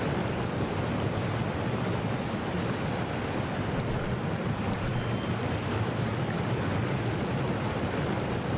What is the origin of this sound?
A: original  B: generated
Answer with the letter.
A